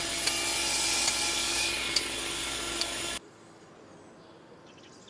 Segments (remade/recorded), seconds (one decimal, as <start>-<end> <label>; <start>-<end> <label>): 0.0-1.4 recorded; 1.4-3.7 remade; 3.7-5.1 recorded